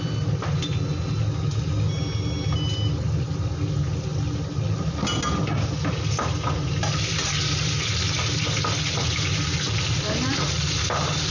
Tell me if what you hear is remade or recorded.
recorded